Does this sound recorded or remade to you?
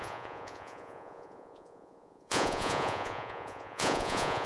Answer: remade